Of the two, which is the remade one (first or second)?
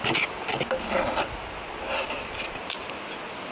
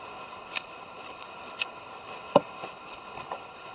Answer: second